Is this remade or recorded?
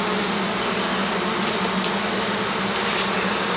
recorded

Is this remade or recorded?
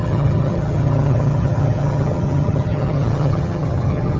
remade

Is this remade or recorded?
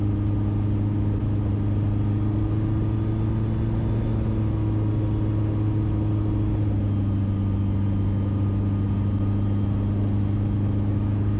recorded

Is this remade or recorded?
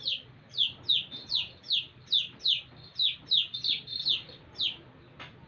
recorded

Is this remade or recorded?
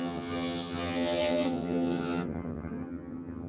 remade